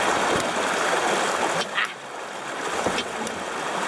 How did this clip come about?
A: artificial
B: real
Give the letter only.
B